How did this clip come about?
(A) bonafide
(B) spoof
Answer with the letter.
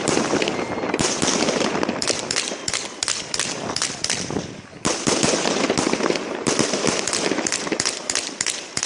B